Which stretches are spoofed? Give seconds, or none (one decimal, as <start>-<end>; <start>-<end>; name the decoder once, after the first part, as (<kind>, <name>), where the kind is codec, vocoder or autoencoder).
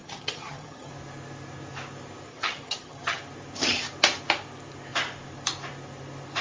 0.0-0.9 (vocoder, HiFi-GAN); 2.3-3.2